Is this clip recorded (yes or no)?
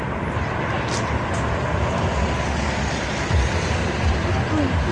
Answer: yes